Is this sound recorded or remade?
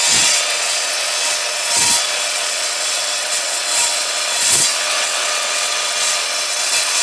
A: remade